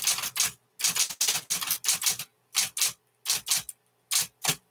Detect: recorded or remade recorded